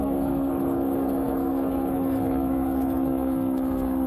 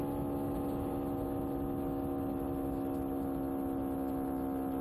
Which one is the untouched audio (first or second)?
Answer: second